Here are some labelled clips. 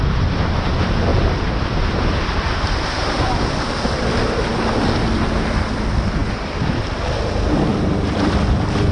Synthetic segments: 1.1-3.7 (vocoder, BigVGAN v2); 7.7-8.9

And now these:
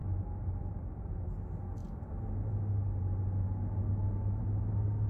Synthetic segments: 0.0-1.1 (vocoder, BigVGAN v2)

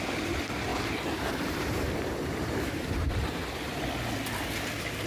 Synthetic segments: 0.7-3.8 (vocoder, BigVGAN v2)